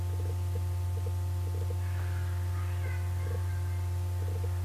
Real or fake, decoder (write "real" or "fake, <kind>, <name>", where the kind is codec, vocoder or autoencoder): real